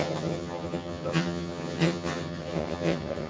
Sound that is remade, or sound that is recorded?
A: remade